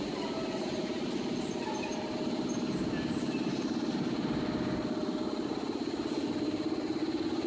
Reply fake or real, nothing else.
real